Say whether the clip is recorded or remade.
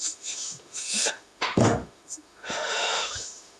remade